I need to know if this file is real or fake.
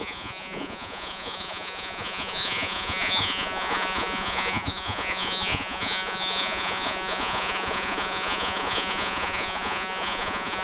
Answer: fake